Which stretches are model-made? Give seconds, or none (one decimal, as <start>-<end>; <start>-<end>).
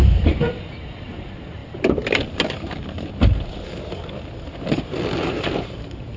none